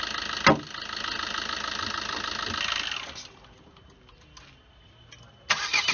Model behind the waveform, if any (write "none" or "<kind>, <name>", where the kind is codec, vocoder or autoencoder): none